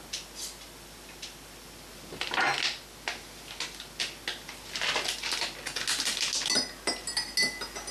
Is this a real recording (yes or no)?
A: yes